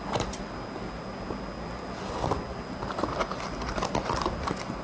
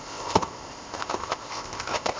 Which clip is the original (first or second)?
first